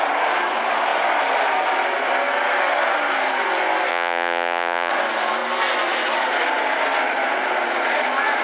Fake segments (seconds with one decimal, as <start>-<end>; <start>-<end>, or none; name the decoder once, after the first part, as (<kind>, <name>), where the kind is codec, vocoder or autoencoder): 3.9-4.9 (vocoder, Vocos)